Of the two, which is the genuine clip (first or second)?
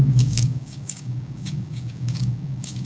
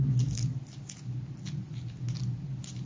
second